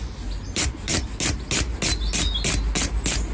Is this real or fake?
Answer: real